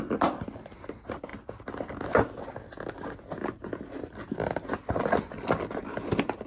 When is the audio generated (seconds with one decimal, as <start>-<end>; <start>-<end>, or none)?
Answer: none